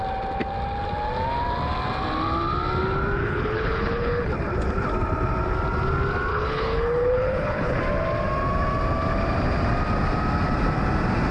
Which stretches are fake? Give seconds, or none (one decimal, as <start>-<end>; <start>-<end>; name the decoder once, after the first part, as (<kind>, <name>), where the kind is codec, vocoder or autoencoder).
3.2-4.3 (codec, HILCodec); 6.3-7.8